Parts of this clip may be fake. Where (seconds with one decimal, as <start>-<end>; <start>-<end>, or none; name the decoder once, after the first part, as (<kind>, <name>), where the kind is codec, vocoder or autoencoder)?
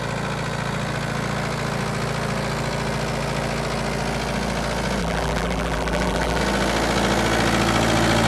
5.0-6.4 (vocoder, BigVGAN v2)